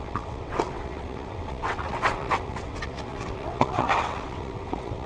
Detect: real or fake fake